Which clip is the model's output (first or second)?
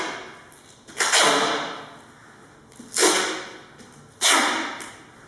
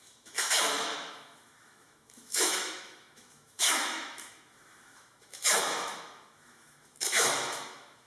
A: second